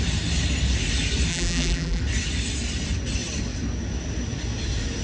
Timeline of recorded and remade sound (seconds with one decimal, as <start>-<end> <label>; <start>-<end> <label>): 0.0-1.3 recorded; 1.3-2.0 remade; 2.0-5.0 recorded